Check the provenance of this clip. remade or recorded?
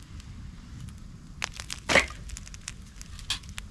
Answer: recorded